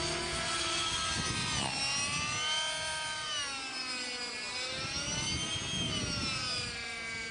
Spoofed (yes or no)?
no